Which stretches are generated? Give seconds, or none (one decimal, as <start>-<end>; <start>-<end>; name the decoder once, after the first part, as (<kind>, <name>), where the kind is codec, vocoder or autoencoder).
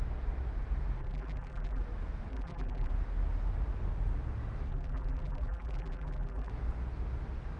1.0-1.8 (vocoder, BigVGAN v2); 2.3-2.9; 4.7-6.5